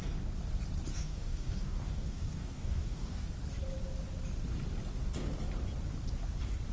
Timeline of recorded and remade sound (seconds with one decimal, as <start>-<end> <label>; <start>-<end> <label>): 0.0-0.9 recorded; 0.9-3.3 remade; 3.3-6.7 recorded